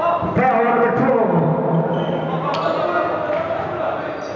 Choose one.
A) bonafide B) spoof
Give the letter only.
A